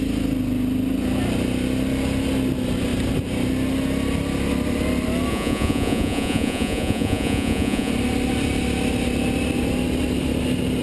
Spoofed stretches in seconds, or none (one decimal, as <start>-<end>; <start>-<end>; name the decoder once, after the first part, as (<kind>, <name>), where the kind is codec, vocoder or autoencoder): 5.3-7.9 (vocoder, Vocos)